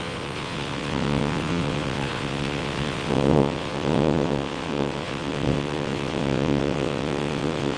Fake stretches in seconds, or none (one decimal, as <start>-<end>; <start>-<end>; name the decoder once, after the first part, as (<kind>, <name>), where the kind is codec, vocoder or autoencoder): 0.0-7.8 (vocoder, WaveNeXt)